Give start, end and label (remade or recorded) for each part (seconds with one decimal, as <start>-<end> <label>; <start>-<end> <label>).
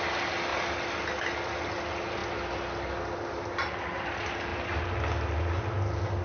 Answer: 0.0-6.2 recorded